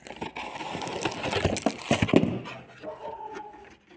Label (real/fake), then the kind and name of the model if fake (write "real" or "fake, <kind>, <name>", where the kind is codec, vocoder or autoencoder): real